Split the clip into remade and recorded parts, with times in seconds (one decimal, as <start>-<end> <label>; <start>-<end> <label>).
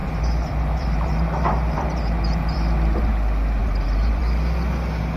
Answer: 0.0-3.1 remade; 3.1-3.6 recorded; 3.6-4.2 remade; 4.2-5.2 recorded